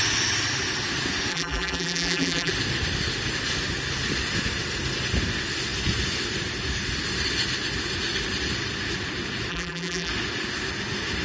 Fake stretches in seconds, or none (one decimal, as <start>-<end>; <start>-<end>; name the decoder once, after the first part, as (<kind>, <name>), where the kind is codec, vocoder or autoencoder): 1.3-2.5 (vocoder, BigVGAN v2); 9.5-10.1